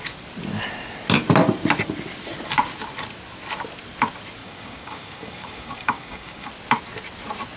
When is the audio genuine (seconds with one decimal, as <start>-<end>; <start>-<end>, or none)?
0.0-4.4; 6.5-7.6